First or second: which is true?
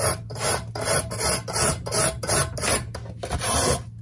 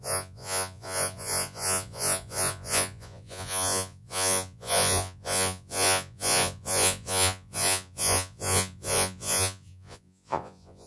first